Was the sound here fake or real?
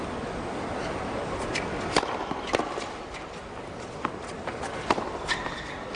real